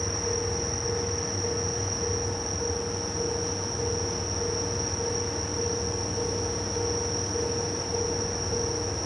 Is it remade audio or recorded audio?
recorded